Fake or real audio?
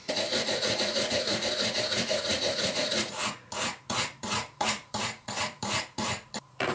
fake